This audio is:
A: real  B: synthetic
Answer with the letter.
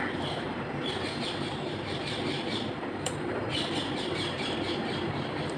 B